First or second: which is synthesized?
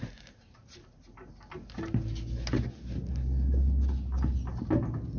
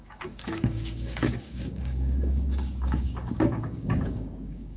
second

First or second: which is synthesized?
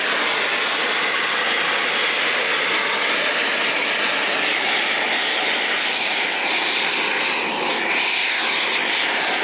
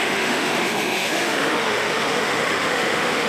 second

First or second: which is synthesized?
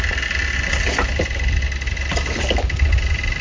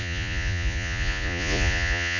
second